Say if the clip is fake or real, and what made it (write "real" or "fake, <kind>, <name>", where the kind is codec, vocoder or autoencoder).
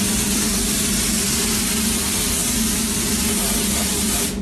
real